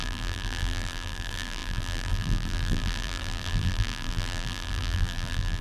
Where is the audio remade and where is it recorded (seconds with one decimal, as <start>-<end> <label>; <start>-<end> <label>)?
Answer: 0.0-5.6 remade